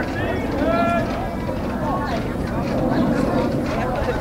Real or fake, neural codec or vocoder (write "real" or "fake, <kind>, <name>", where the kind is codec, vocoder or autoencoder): fake, vocoder, BigVGAN v2